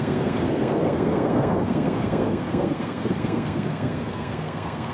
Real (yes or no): no